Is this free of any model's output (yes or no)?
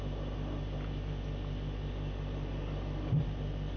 yes